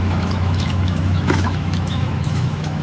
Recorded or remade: remade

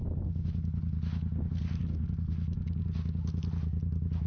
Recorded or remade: recorded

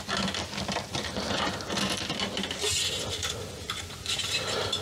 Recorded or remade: recorded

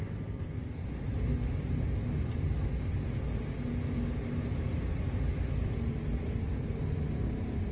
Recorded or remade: recorded